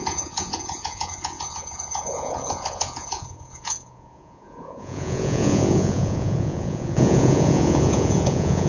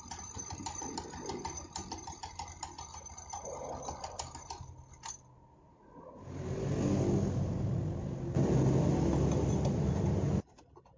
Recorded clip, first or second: second